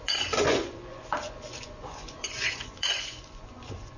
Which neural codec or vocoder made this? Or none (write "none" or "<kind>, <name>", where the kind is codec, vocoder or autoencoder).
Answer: vocoder, Vocos